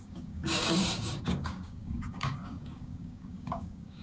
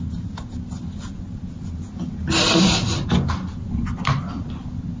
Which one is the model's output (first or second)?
first